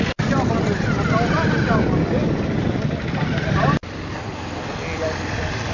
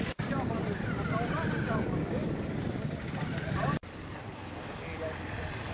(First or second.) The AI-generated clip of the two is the second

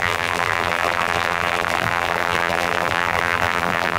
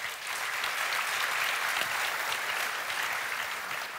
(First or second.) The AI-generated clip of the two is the first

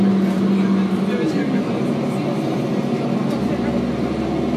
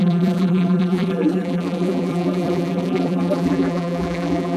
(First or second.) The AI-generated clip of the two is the second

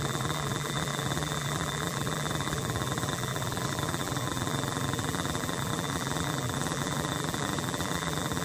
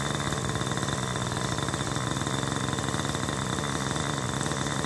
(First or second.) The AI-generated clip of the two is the first